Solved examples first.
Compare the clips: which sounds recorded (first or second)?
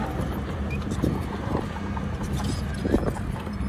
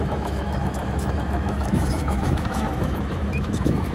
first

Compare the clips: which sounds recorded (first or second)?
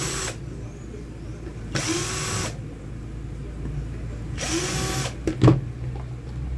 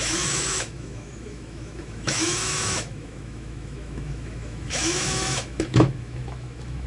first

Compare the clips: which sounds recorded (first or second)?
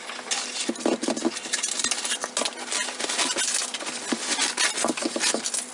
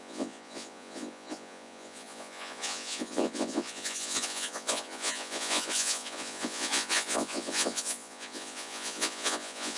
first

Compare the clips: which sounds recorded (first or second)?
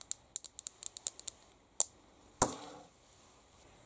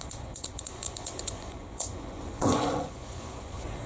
first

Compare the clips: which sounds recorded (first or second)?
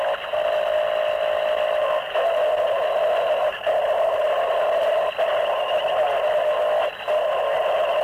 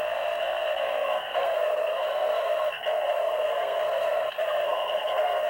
first